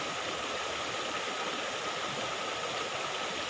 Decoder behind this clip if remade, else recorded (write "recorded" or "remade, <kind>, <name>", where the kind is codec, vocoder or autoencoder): recorded